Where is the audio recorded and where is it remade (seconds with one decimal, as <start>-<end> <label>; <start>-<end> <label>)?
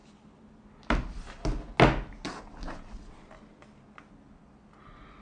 0.0-5.2 recorded